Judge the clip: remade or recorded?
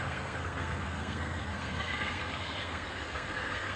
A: remade